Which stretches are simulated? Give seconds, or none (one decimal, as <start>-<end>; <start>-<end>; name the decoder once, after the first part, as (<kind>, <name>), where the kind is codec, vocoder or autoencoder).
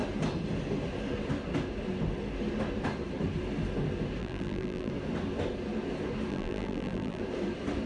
4.2-4.9 (vocoder, BigVGAN v2); 6.3-7.2